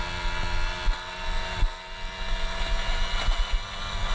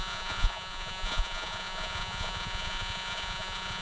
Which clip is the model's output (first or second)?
second